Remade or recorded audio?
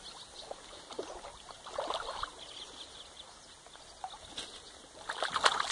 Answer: recorded